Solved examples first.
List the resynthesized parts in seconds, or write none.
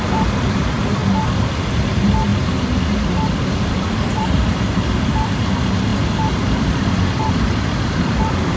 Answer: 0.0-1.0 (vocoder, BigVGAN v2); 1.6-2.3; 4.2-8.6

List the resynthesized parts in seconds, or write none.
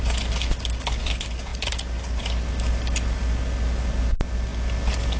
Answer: none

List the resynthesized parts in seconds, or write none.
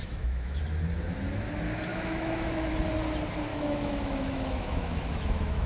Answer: 0.0-0.6 (autoencoder, DAC-VAE); 1.9-2.7; 3.5-5.7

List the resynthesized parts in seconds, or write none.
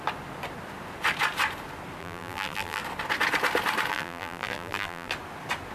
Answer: 2.0-2.8 (vocoder, BigVGAN v2); 3.9-5.1